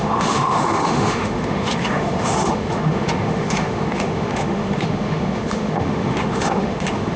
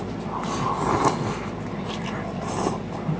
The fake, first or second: first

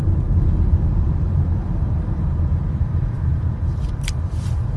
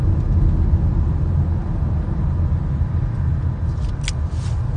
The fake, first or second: first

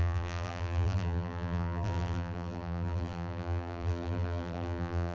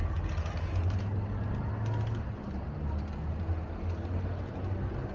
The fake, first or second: first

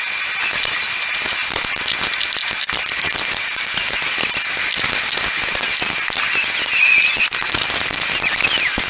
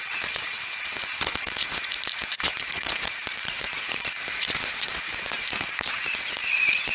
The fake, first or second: second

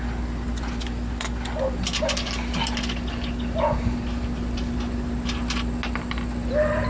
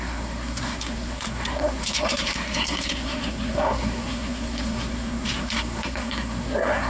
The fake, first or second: second